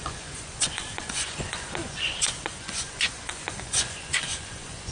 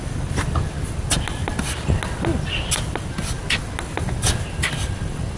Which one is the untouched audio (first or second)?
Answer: second